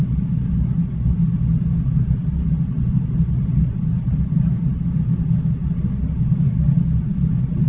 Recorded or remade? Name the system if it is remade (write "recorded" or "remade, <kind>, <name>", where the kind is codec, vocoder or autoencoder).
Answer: recorded